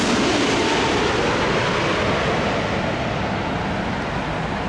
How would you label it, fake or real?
real